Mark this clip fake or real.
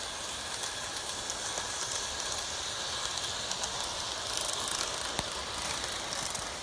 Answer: real